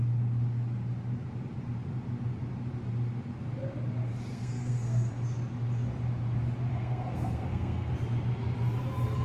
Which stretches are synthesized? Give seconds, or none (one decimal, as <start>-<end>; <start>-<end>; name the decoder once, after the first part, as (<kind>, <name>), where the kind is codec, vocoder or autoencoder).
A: 4.3-5.1 (codec, SNAC); 6.7-7.9